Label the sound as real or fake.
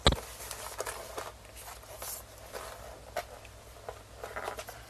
real